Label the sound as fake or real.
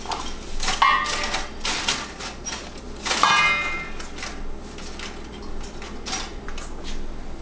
real